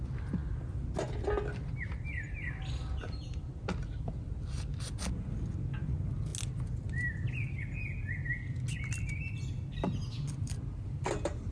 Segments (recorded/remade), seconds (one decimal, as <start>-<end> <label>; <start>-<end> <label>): 0.0-11.5 recorded